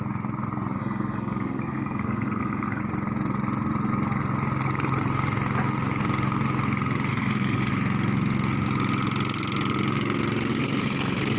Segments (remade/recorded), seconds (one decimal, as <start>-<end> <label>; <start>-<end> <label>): 0.0-0.8 recorded; 0.8-2.8 remade; 2.8-7.1 recorded; 7.1-7.7 remade; 7.7-10.5 recorded; 10.5-11.4 remade